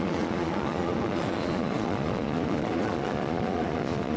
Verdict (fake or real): fake